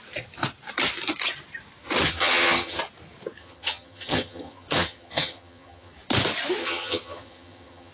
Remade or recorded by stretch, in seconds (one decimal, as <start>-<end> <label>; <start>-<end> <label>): 0.0-2.0 recorded; 2.0-2.8 remade; 2.8-3.4 recorded; 3.4-5.9 remade; 5.9-6.6 recorded; 6.6-7.9 remade